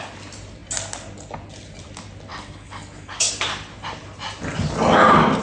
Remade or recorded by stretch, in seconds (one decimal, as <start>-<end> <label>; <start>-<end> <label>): 0.0-2.3 recorded; 2.3-3.3 remade; 3.3-5.4 recorded